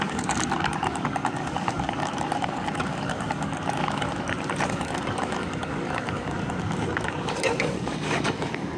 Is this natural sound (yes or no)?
no